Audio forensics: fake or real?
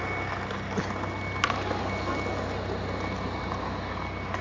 real